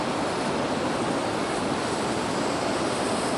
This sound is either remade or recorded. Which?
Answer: recorded